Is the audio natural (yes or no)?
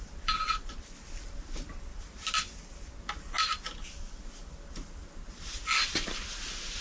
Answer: yes